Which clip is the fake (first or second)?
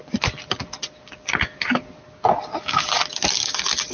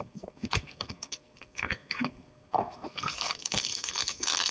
second